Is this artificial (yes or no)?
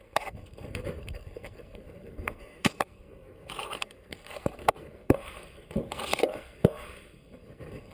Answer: yes